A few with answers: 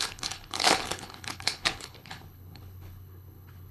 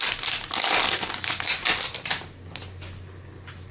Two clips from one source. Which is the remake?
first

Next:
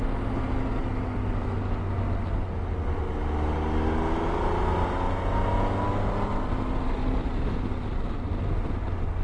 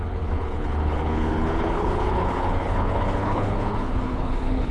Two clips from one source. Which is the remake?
second